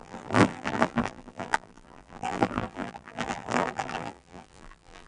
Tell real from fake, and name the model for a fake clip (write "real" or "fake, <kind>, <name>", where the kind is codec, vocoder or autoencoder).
fake, vocoder, BigVGAN v2